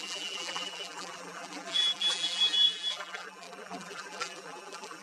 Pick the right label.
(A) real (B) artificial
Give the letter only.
B